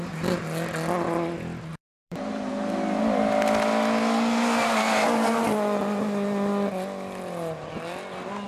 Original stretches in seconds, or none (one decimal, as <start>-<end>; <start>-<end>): 0.0-1.7; 2.5-8.5